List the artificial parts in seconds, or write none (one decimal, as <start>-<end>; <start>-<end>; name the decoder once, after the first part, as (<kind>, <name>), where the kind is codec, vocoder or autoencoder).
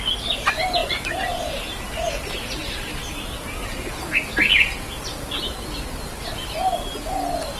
0.8-1.8 (vocoder, BigVGAN v2)